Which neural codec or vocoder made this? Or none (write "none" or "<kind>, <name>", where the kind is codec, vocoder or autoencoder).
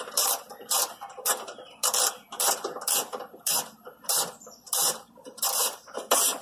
vocoder, BigVGAN v2